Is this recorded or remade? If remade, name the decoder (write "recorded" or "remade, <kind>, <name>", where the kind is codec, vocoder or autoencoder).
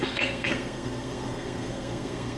remade, codec, SNAC